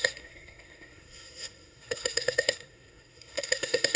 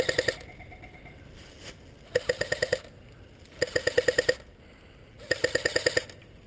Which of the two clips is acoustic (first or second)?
second